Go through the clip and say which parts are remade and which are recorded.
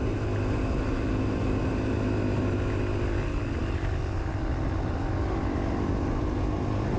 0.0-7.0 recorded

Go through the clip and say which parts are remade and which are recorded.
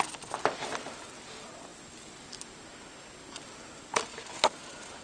0.0-5.0 recorded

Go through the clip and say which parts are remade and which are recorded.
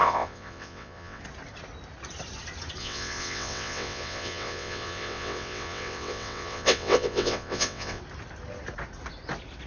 0.0-1.2 remade; 1.2-2.8 recorded; 2.8-8.0 remade; 8.0-9.7 recorded